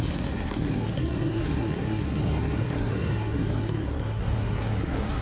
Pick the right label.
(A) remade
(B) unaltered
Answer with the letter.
A